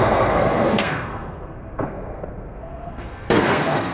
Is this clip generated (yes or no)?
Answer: yes